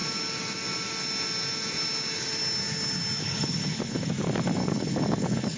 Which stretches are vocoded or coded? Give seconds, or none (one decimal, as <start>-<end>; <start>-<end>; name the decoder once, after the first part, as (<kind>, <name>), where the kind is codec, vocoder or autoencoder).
3.2-4.1 (codec, HILCodec); 4.6-5.6

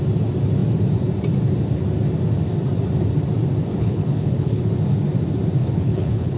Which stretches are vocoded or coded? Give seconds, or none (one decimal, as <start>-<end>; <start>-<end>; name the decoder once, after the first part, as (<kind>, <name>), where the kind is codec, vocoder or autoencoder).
3.7-4.7 (codec, HILCodec); 5.6-6.4

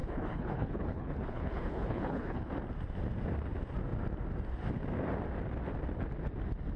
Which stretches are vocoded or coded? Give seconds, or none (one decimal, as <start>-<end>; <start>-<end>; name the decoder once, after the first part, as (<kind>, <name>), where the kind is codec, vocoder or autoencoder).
0.0-2.5 (codec, HILCodec)

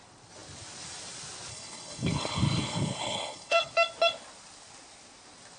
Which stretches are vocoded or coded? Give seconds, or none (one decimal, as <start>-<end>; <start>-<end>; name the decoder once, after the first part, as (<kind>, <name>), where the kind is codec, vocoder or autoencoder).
1.5-3.7 (codec, HILCodec)

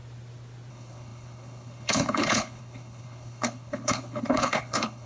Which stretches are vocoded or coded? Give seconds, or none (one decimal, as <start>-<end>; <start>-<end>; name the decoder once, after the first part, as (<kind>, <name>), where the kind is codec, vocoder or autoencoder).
0.7-5.1 (codec, HILCodec)

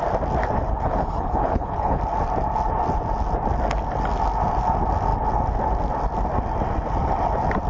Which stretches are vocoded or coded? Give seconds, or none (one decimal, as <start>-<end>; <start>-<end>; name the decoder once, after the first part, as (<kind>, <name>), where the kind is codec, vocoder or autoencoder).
0.7-2.0 (codec, HILCodec)

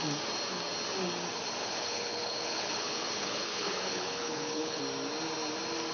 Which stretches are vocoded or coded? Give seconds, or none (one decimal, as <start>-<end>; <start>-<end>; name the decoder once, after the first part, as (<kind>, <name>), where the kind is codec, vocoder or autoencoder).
1.6-4.8 (codec, HILCodec)